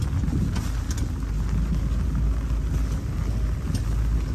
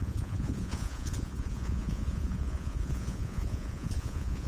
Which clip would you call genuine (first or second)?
first